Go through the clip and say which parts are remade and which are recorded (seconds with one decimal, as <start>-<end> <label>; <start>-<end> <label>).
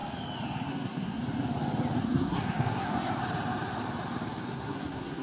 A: 0.0-0.7 recorded; 0.7-1.2 remade; 1.2-2.0 recorded; 2.0-3.2 remade; 3.2-4.5 recorded; 4.5-5.2 remade